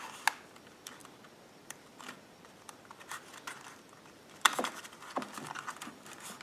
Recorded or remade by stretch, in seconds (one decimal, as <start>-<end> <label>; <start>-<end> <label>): 0.0-1.0 recorded; 1.0-4.8 remade; 4.8-6.4 recorded

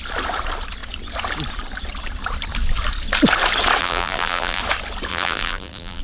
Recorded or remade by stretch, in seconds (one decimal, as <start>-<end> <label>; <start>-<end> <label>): 0.0-3.8 recorded; 3.8-4.6 remade; 4.6-5.1 recorded; 5.1-6.0 remade